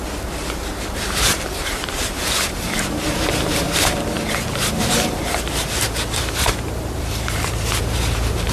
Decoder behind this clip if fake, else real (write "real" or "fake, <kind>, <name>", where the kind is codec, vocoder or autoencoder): fake, vocoder, BigVGAN v2